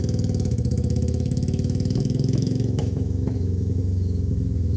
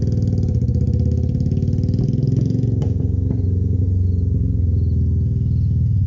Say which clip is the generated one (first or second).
first